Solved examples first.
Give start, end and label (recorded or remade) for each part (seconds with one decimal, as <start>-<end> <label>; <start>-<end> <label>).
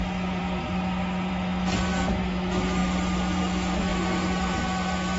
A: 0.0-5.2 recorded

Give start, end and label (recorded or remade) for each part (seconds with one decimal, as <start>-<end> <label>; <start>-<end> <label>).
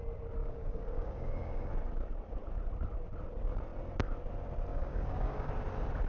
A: 0.0-0.4 recorded; 0.4-1.7 remade; 1.7-4.7 recorded; 4.7-5.5 remade; 5.5-6.1 recorded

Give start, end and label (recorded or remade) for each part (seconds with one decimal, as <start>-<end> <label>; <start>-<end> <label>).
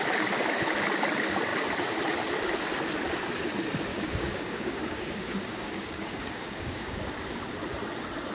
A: 0.0-3.9 recorded; 3.9-7.0 remade; 7.0-8.3 recorded